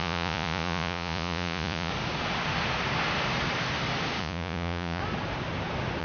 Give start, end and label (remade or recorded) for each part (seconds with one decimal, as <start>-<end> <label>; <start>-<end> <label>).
0.0-1.9 remade; 1.9-4.2 recorded; 4.2-5.0 remade; 5.0-6.0 recorded